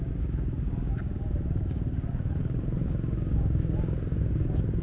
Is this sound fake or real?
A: fake